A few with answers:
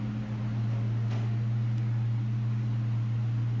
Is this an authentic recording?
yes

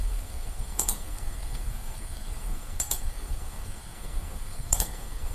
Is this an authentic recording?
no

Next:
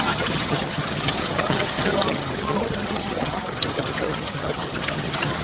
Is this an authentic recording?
no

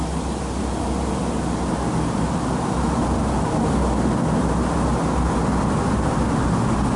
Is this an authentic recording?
yes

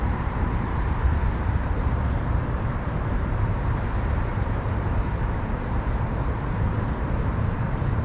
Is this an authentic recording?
no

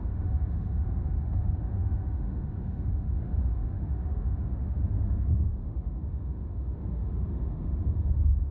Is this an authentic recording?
no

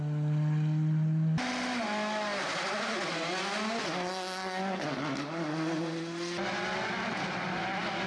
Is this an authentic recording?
yes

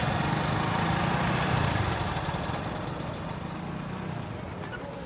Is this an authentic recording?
yes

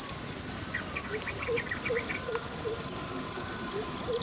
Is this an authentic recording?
yes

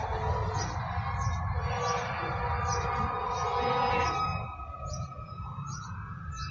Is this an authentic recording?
yes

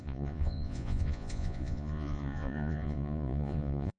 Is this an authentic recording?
no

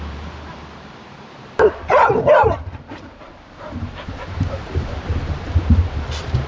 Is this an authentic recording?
no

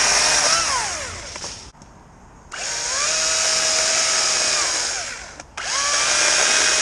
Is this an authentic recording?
yes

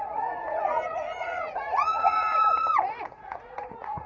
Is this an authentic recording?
no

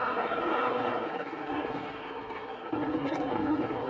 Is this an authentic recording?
no